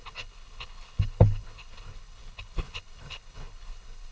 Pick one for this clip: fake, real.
fake